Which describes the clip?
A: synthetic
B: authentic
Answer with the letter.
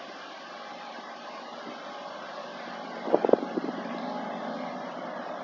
B